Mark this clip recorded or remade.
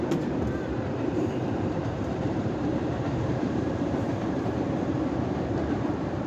remade